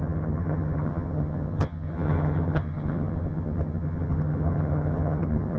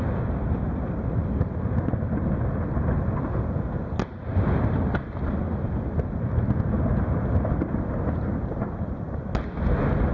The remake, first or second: first